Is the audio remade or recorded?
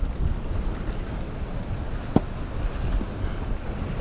recorded